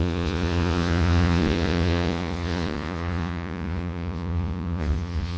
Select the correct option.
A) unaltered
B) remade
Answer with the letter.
B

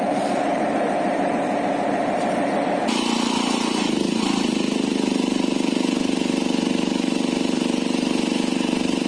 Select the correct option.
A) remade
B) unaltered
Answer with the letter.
A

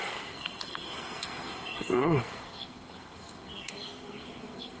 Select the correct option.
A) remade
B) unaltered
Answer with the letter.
A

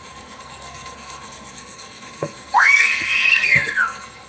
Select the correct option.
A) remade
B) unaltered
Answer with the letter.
A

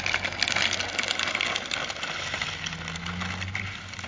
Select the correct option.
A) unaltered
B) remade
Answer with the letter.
A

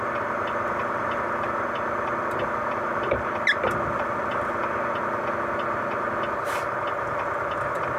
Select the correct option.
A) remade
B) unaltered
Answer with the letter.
B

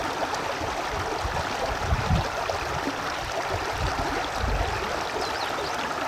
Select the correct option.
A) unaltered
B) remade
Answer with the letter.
A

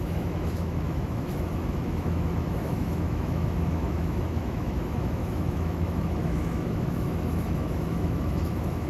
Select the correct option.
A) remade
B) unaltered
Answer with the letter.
A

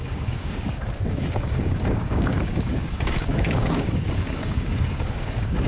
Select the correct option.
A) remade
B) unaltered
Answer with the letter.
A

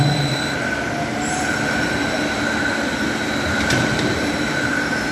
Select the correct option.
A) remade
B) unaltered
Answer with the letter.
A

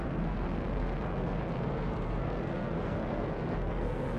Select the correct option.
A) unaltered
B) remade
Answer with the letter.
B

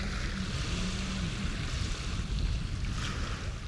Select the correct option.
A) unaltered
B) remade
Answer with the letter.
A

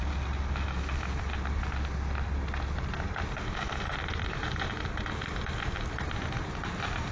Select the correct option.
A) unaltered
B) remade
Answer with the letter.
A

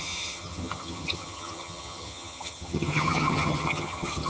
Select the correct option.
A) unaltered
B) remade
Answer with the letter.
B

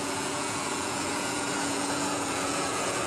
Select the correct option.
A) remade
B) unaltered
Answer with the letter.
A